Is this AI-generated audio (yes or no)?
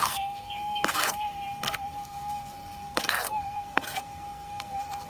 yes